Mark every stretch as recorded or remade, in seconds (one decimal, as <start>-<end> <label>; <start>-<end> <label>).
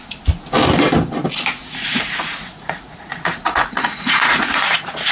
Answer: 0.0-1.6 recorded; 1.6-5.1 remade